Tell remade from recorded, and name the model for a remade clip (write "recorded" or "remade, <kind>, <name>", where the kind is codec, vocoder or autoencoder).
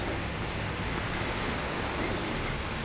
recorded